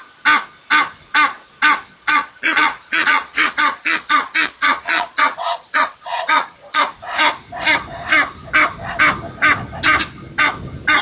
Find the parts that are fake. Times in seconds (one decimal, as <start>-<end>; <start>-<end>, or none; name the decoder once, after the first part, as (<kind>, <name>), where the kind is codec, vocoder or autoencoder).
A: 2.0-6.8 (vocoder, Vocos)